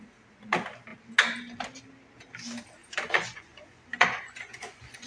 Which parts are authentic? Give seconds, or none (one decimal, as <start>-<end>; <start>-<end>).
0.0-2.8